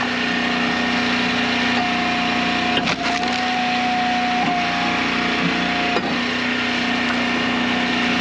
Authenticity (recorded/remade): recorded